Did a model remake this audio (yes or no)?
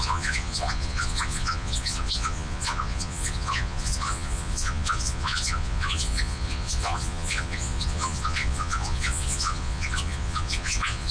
yes